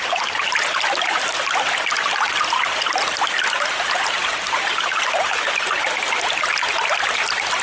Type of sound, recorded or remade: recorded